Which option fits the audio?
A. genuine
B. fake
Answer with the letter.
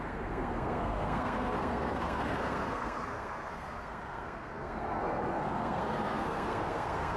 B